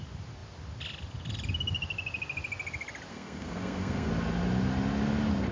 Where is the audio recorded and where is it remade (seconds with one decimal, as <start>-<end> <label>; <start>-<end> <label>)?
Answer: 0.0-3.1 recorded; 3.1-4.1 remade; 4.1-5.5 recorded